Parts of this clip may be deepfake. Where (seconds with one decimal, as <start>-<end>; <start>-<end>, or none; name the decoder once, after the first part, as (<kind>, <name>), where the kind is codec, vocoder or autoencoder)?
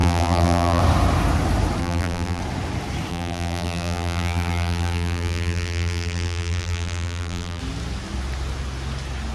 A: 0.0-0.8 (vocoder, BigVGAN v2); 1.8-2.4; 3.1-7.6